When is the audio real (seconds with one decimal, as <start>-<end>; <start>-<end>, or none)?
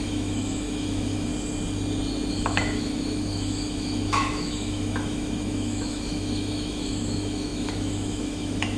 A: 1.3-2.3